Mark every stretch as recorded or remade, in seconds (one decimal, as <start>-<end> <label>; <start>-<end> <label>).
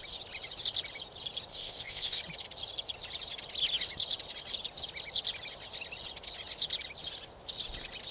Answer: 0.0-1.5 recorded; 1.5-2.2 remade; 2.2-8.1 recorded